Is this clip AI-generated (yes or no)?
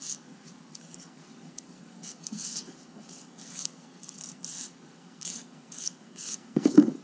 yes